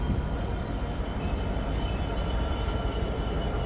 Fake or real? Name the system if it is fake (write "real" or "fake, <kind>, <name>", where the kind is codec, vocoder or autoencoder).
fake, vocoder, BigVGAN v2